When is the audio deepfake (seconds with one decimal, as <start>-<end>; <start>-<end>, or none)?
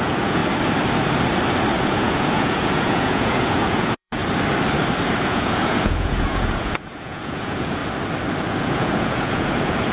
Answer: 0.0-0.4; 1.8-4.2; 5.2-7.8; 8.5-9.9